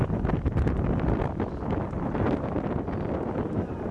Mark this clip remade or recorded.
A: recorded